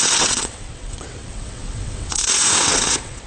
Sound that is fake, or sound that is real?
fake